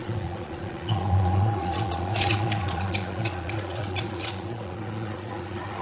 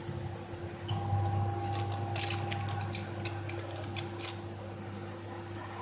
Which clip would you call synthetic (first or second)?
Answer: first